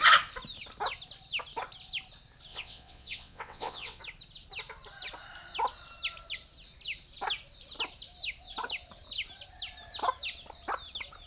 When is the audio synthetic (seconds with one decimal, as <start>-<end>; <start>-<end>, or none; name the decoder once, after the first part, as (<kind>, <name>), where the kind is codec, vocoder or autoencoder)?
2.5-4.0 (vocoder, WaveNeXt)